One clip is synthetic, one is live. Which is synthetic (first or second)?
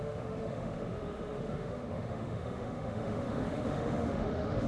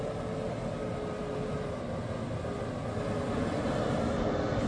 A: first